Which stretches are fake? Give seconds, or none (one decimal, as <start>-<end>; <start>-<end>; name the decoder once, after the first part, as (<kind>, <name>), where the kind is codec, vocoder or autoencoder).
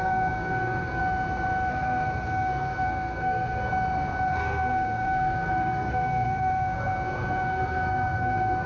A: 0.0-1.0 (codec, SNAC); 1.7-3.7; 4.3-8.7